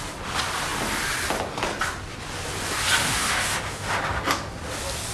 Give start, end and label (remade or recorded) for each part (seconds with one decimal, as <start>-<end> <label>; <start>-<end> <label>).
0.0-3.0 recorded; 3.0-3.9 remade; 3.9-5.1 recorded

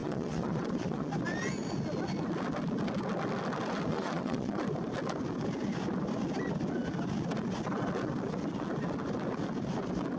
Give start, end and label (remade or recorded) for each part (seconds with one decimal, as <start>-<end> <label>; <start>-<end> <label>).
0.0-1.1 remade; 1.1-3.9 recorded; 3.9-4.6 remade; 4.6-10.2 recorded

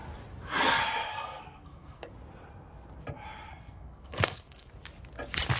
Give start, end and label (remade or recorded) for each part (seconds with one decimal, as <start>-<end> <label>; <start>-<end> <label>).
0.0-1.1 recorded; 1.1-2.1 remade; 2.1-3.5 recorded; 3.5-4.7 remade; 4.7-5.6 recorded